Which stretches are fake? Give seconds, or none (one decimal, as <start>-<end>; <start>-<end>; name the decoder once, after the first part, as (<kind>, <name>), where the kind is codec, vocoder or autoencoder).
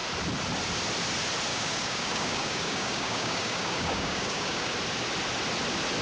1.5-4.7 (codec, DAC)